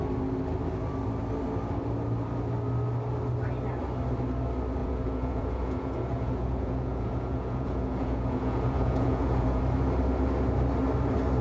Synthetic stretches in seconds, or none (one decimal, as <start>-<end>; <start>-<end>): 4.8-9.6